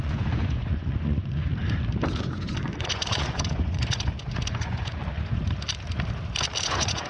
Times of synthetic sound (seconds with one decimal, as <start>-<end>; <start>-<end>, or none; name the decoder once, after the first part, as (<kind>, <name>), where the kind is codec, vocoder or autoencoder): 0.0-1.5 (vocoder, Vocos); 2.2-5.1; 6.6-7.1